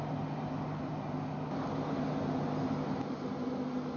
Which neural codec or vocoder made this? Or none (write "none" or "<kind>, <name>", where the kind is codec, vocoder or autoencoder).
none